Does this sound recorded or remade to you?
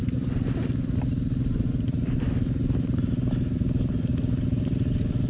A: recorded